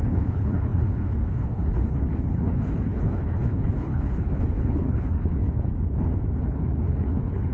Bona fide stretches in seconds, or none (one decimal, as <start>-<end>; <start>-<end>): 5.7-6.4